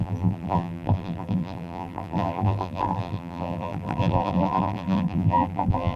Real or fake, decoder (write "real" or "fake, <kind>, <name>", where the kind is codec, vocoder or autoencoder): fake, vocoder, BigVGAN v2